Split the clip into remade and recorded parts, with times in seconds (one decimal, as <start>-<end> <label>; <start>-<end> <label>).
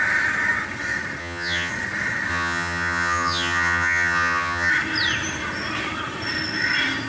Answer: 0.0-1.2 recorded; 1.2-1.7 remade; 1.7-2.3 recorded; 2.3-4.7 remade; 4.7-7.1 recorded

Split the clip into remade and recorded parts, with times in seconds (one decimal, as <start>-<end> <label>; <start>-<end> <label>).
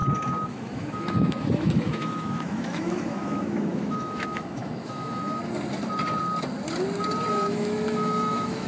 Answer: 0.0-0.5 recorded; 0.5-5.4 remade; 5.4-7.3 recorded; 7.3-8.7 remade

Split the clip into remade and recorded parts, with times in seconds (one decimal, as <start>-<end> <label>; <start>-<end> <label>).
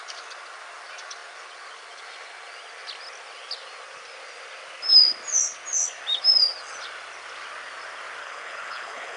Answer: 0.0-8.2 recorded; 8.2-9.2 remade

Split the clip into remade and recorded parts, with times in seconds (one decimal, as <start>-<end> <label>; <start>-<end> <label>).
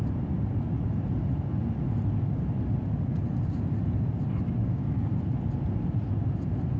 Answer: 0.0-4.6 recorded; 4.6-5.1 remade; 5.1-6.8 recorded